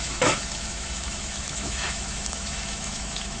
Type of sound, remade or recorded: remade